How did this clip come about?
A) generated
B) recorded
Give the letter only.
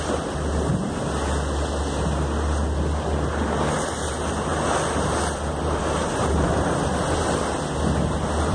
B